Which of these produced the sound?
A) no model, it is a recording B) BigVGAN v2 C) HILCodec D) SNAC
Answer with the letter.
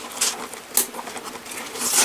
A